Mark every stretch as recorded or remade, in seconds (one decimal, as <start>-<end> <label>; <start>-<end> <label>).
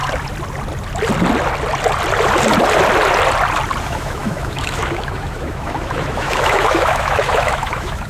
0.0-3.8 recorded; 3.8-8.1 remade